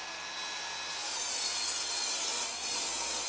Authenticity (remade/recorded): recorded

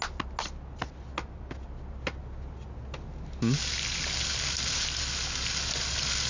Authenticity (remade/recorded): recorded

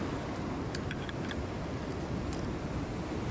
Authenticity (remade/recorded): recorded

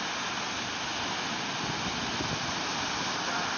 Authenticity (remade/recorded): recorded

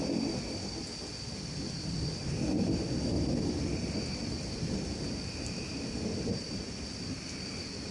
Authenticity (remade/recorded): recorded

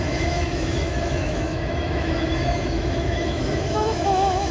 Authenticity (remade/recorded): remade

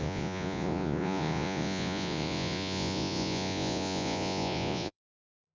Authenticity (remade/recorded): remade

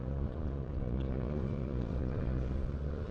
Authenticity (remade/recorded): remade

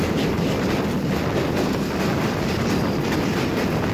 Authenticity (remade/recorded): recorded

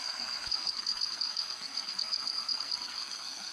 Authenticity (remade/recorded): remade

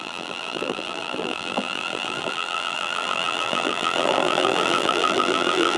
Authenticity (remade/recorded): remade